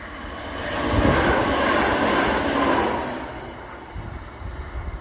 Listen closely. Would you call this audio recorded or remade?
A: recorded